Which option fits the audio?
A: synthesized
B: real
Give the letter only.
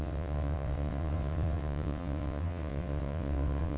A